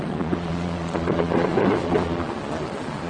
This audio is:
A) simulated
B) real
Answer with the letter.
A